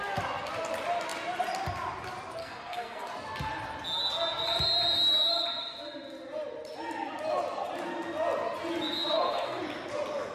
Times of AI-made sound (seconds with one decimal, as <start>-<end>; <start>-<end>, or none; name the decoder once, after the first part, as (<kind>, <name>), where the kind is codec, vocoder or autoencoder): 2.4-3.1 (codec, SNAC); 9.0-9.6

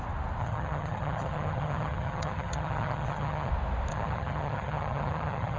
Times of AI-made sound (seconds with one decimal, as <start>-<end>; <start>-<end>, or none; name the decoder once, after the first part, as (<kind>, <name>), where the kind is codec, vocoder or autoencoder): 0.4-3.5 (vocoder, HiFi-GAN); 3.9-5.6

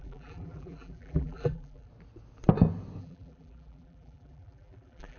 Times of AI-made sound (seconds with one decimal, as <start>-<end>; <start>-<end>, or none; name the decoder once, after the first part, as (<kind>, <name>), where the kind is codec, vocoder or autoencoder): 0.0-1.9 (vocoder, BigVGAN v2); 3.0-5.2

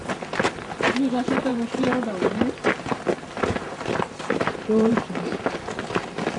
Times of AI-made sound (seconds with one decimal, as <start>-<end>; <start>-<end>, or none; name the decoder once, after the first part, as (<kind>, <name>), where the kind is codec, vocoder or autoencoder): none

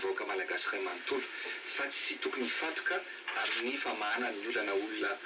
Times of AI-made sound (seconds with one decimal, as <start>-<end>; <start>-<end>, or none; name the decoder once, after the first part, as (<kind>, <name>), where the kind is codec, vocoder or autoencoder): none

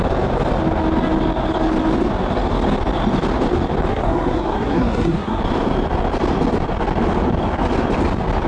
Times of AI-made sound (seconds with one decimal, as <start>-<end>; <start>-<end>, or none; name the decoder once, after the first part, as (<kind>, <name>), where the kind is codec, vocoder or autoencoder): 3.9-5.4 (codec, SNAC)

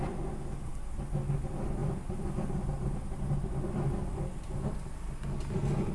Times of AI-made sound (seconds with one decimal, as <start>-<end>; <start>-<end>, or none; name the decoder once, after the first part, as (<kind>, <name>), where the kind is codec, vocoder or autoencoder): 1.8-2.4 (vocoder, BigVGAN v2)

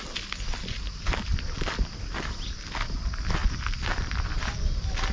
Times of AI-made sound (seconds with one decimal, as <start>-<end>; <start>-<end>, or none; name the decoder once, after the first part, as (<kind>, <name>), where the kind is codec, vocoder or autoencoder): 1.3-2.5 (vocoder, BigVGAN v2); 3.4-5.1